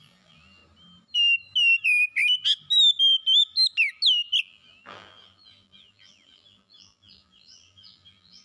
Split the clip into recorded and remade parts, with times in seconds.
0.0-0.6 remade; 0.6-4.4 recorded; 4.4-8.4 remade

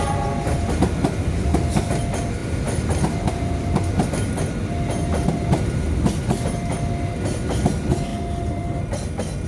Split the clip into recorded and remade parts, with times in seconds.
0.0-9.5 recorded